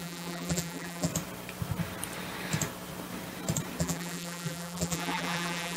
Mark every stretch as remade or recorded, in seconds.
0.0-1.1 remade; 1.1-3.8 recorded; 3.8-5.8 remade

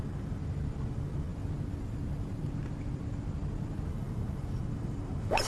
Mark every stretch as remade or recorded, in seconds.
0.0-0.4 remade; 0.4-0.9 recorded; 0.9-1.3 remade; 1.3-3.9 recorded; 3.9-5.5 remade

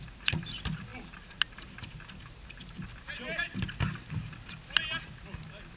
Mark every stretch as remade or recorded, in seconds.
0.0-5.8 recorded

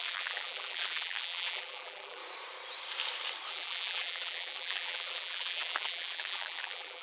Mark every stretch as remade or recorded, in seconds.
0.0-2.2 remade; 2.2-3.5 recorded; 3.5-7.0 remade

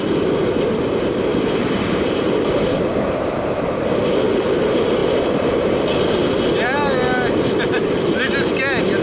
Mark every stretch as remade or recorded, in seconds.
0.0-1.3 recorded; 1.3-3.4 remade; 3.4-9.0 recorded